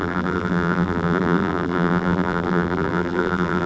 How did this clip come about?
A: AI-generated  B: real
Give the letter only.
A